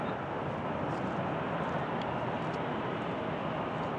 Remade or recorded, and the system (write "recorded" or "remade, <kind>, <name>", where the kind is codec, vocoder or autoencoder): recorded